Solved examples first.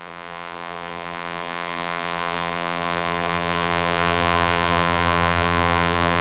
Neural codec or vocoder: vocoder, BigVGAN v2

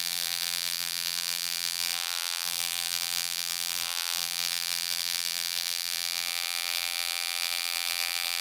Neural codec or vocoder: vocoder, BigVGAN v2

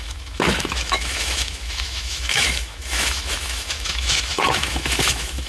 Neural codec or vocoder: autoencoder, DAC-VAE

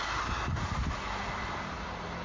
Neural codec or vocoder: none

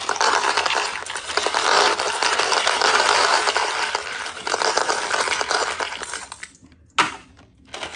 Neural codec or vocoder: none